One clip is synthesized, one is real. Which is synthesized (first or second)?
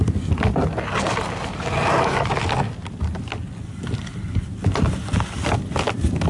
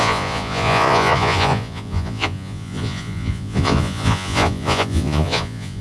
second